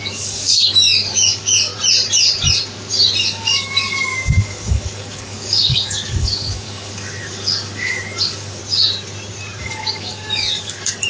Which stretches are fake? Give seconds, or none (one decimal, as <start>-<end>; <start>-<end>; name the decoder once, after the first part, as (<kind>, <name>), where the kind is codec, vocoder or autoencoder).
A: 0.0-1.7 (codec, DAC); 3.2-8.6; 9.6-11.1